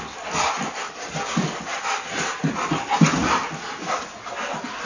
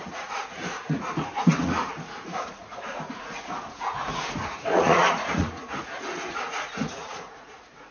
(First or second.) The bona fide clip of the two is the first